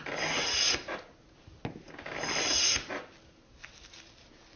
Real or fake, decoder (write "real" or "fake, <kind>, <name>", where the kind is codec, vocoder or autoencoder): real